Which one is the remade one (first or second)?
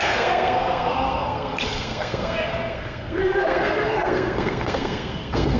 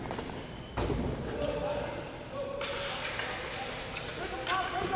first